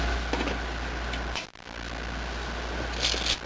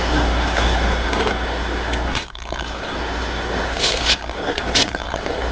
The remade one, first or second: second